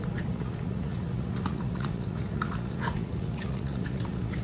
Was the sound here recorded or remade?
remade